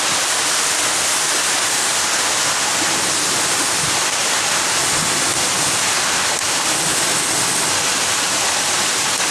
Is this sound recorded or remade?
recorded